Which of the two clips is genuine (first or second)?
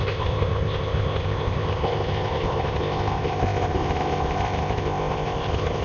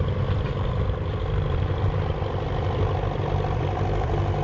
second